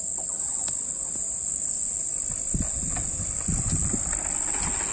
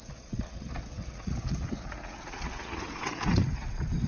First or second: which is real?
first